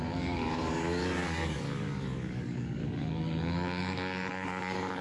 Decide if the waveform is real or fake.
fake